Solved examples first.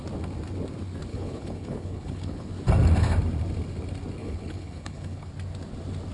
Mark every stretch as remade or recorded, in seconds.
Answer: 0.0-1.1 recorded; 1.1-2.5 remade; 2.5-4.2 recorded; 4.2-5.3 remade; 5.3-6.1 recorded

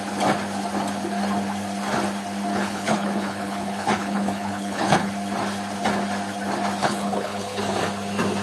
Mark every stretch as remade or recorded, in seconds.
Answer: 0.0-2.5 recorded; 2.5-5.1 remade; 5.1-6.8 recorded; 6.8-7.6 remade; 7.6-8.4 recorded

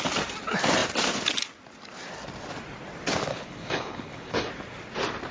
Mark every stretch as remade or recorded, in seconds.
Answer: 0.0-3.3 recorded; 3.3-4.5 remade; 4.5-5.3 recorded

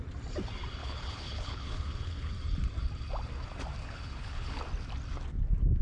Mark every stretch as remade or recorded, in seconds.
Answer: 0.0-0.8 recorded; 0.8-2.3 remade; 2.3-3.8 recorded; 3.8-4.6 remade; 4.6-5.8 recorded